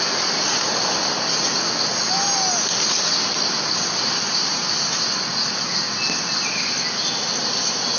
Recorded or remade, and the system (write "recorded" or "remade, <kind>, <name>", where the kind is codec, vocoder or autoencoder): recorded